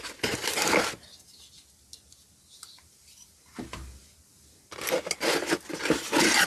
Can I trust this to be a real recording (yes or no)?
yes